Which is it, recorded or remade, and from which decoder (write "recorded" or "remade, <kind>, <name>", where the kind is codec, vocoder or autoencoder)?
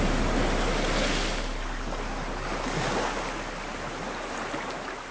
recorded